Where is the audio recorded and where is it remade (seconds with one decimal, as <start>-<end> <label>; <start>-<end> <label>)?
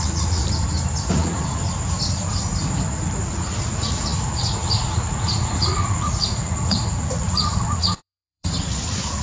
0.0-0.4 remade; 0.4-1.1 recorded; 1.1-1.6 remade; 1.6-3.2 recorded; 3.2-9.2 remade